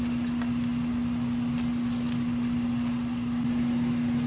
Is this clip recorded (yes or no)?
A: yes